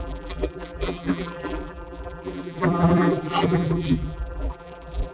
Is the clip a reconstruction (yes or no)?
yes